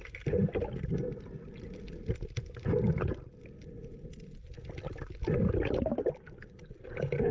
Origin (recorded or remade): recorded